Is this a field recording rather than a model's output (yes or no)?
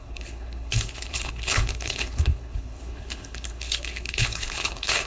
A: no